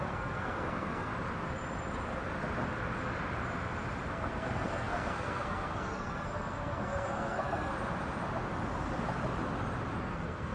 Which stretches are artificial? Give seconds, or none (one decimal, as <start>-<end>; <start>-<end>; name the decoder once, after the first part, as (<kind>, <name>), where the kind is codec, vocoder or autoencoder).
0.0-1.1 (codec, SNAC); 4.1-7.7; 10.0-10.5